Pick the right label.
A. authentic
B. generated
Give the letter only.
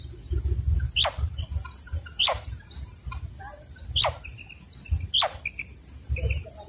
A